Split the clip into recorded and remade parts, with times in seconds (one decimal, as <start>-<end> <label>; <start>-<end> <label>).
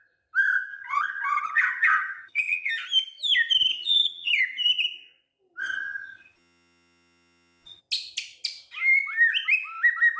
0.0-0.7 recorded; 0.7-2.7 remade; 2.7-3.7 recorded; 3.7-4.3 remade; 4.3-5.6 recorded; 5.6-7.8 remade; 7.8-10.2 recorded